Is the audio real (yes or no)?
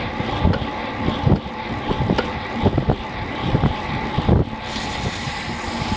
yes